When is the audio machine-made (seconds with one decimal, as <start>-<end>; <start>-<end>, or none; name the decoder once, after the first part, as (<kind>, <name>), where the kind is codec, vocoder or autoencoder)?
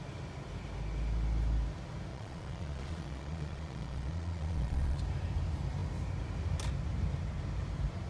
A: 2.1-5.0 (vocoder, Vocos)